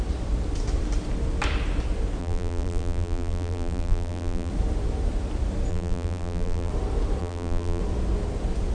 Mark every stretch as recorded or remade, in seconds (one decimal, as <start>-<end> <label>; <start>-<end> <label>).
0.0-2.2 recorded; 2.2-4.5 remade; 4.5-5.7 recorded; 5.7-6.7 remade; 6.7-7.2 recorded; 7.2-7.8 remade; 7.8-8.7 recorded